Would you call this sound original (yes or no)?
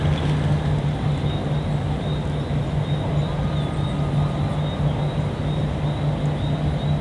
yes